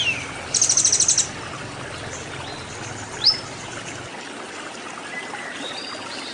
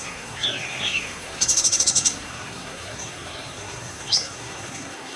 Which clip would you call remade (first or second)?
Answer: second